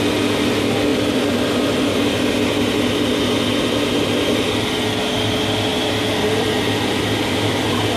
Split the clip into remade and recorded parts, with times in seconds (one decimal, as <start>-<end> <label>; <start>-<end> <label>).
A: 0.0-0.9 recorded; 0.9-2.3 remade; 2.3-5.7 recorded; 5.7-8.0 remade